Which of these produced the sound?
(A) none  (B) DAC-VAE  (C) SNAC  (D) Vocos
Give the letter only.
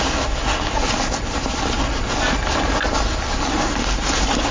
A